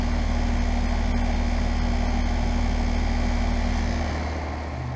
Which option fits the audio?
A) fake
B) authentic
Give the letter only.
B